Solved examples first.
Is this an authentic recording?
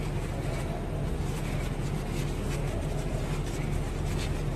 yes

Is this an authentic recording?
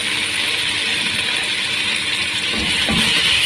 yes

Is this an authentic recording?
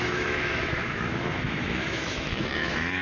no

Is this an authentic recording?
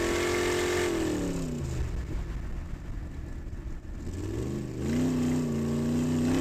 yes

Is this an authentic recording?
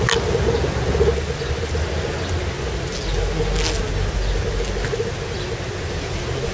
yes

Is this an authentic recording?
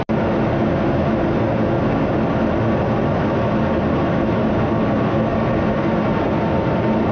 yes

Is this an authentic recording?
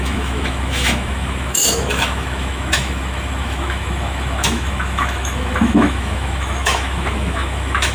no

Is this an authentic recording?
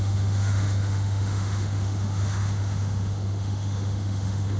no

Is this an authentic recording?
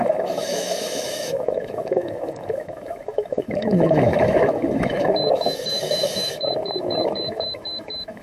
no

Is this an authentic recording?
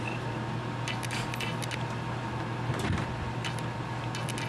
yes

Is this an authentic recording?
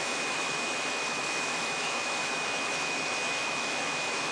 no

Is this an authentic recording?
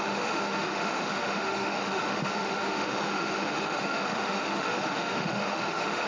no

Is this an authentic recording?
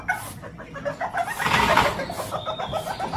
yes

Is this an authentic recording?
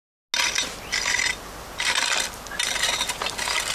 yes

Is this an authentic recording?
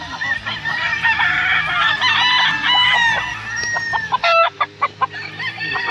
yes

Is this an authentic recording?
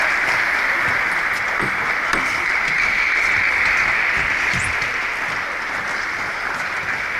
yes